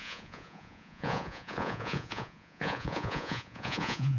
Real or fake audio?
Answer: fake